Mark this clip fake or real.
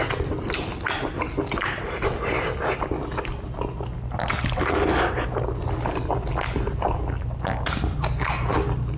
real